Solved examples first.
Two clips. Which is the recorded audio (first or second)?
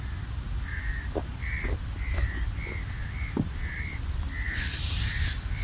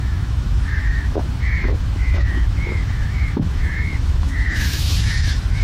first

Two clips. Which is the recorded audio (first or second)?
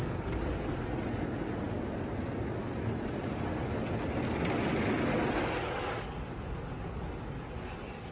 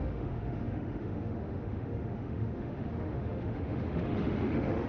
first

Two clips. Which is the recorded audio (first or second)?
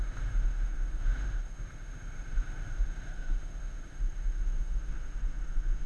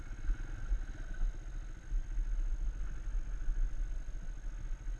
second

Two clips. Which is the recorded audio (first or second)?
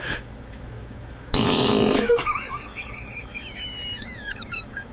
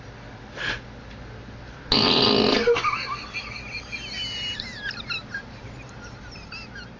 second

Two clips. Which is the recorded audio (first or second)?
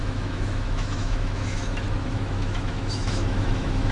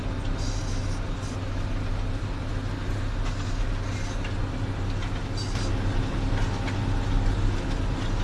second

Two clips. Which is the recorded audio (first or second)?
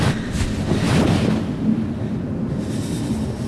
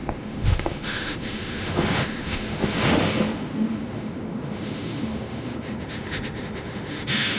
first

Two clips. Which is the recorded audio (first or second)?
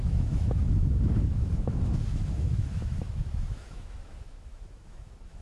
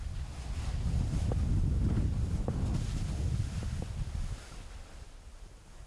second